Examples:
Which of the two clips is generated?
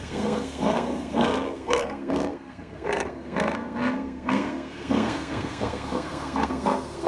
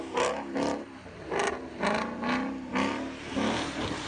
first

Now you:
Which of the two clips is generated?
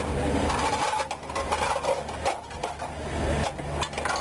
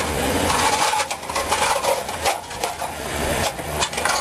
second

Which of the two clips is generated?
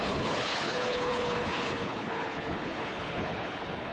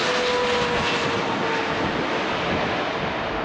first